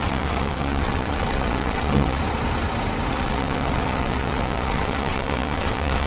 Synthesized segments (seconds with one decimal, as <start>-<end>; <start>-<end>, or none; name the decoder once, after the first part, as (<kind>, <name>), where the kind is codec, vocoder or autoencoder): 0.0-2.2 (vocoder, WaveNeXt); 3.1-6.1